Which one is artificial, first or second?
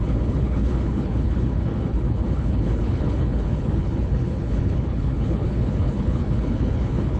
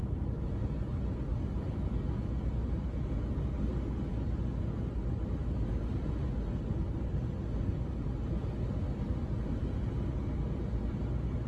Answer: first